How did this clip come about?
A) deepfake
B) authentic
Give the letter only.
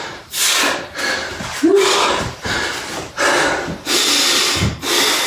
B